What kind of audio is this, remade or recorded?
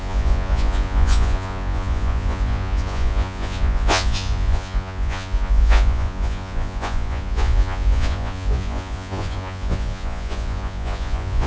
remade